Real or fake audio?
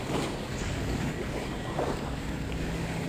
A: fake